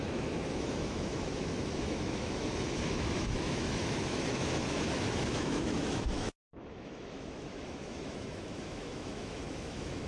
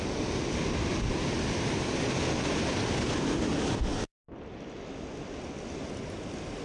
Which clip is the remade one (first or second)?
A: first